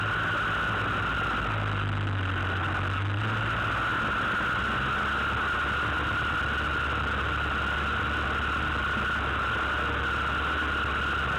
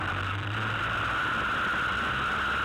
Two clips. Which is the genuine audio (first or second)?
first